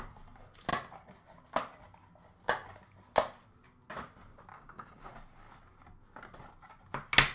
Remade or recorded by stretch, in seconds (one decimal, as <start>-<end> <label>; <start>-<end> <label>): 0.0-4.5 recorded; 4.5-5.1 remade; 5.1-7.3 recorded